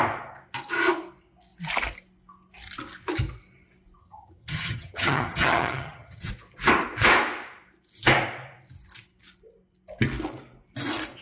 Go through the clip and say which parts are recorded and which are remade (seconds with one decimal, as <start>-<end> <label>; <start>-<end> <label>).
0.0-4.0 recorded; 4.0-6.3 remade; 6.3-11.2 recorded